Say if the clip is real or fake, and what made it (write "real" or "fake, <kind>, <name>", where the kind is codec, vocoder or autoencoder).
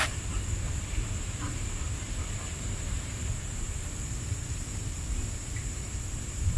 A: fake, vocoder, BigVGAN v2